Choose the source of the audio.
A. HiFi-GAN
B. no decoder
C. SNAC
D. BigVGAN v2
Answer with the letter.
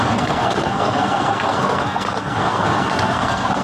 C